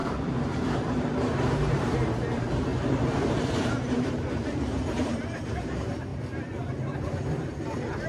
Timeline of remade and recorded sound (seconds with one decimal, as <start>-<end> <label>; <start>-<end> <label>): 0.0-6.1 remade; 6.1-8.1 recorded